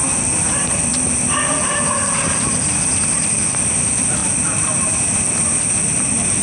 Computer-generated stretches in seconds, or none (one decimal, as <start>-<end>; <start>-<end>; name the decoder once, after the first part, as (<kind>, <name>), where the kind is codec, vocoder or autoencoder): 0.0-0.5 (vocoder, BigVGAN v2)